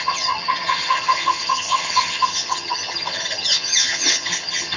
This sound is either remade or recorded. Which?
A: remade